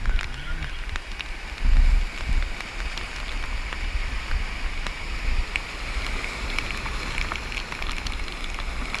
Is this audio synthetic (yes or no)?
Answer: no